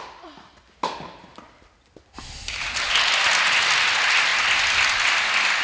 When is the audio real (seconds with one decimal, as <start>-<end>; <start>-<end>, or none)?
0.0-5.6